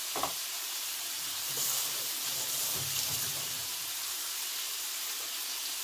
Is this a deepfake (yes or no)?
yes